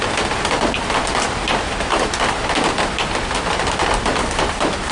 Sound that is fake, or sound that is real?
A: real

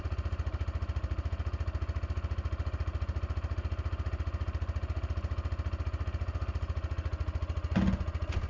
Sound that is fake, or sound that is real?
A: real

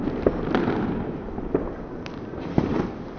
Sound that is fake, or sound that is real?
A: fake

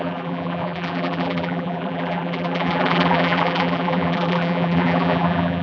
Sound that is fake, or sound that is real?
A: fake